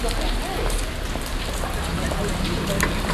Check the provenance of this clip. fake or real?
real